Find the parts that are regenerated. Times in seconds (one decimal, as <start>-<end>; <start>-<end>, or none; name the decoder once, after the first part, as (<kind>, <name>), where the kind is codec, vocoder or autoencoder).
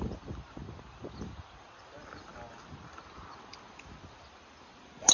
none